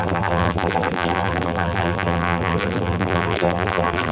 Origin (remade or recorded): remade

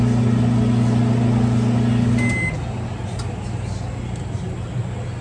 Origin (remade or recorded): recorded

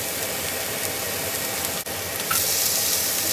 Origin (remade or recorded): recorded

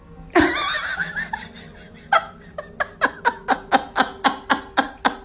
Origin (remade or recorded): recorded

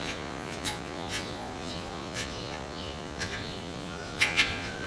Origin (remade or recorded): remade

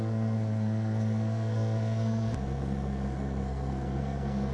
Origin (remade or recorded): remade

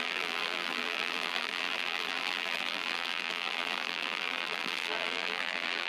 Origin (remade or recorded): remade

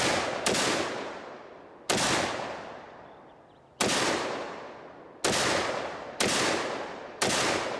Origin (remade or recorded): recorded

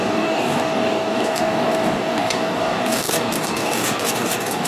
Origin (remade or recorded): remade